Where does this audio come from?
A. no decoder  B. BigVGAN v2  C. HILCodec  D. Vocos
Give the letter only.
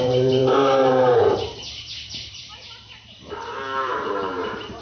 B